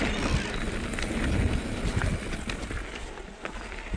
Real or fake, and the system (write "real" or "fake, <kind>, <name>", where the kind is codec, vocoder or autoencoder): real